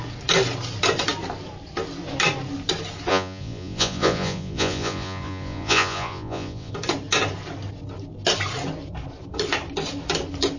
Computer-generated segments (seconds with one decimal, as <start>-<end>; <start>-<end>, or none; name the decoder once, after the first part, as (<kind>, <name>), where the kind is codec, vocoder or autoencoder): 3.1-6.7 (vocoder, Vocos)